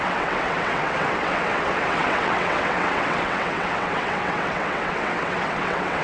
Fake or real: fake